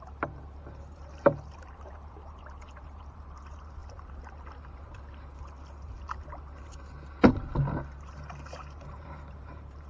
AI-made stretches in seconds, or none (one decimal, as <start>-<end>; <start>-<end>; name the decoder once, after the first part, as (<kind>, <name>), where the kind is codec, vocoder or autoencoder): 0.0-3.8 (vocoder, BigVGAN v2); 7.6-9.9